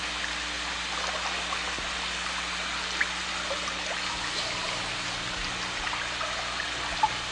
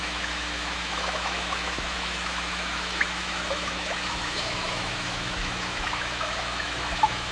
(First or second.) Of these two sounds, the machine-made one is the second